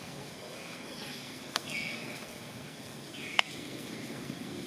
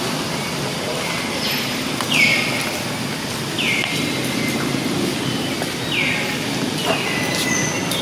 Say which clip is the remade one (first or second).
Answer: first